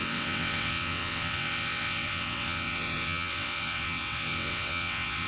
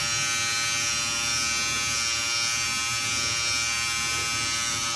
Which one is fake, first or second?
first